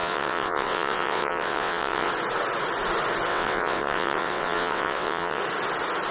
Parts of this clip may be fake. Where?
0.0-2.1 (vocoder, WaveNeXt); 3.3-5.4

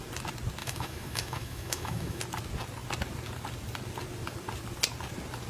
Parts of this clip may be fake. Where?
0.6-2.2 (autoencoder, DAC-VAE)

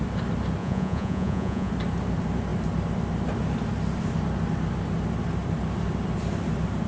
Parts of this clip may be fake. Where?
0.6-1.7 (vocoder, Vocos)

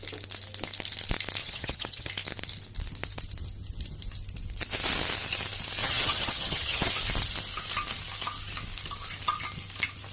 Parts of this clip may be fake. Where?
1.4-2.1 (vocoder, HiFi-GAN); 5.8-6.9

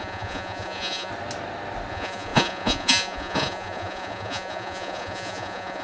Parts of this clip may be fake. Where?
0.0-1.1 (vocoder, Vocos); 1.9-5.8

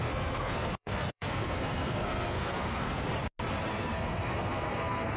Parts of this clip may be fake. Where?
0.0-3.1 (codec, SNAC); 3.7-5.2